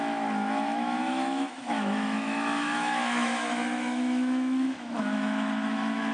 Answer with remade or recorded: remade